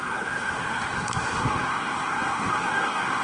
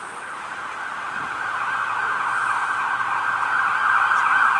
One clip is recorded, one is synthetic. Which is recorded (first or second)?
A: second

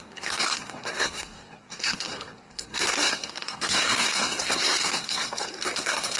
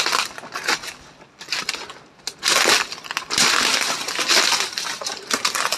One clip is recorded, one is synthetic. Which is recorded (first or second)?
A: second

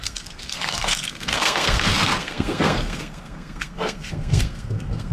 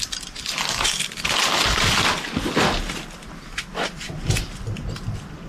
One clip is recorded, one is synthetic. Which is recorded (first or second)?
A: second